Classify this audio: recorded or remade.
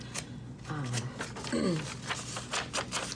recorded